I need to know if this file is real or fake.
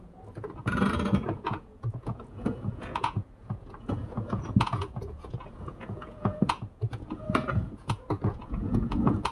fake